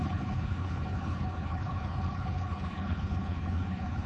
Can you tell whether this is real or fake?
fake